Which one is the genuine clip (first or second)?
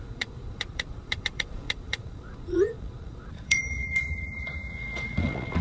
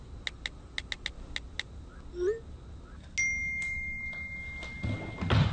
second